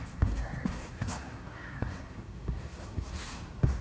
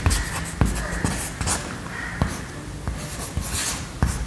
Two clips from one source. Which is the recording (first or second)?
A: second